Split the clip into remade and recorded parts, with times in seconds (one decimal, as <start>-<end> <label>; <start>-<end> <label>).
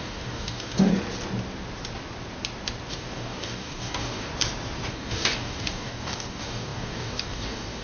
0.0-0.9 remade; 0.9-2.9 recorded; 2.9-4.3 remade; 4.3-4.9 recorded; 4.9-7.8 remade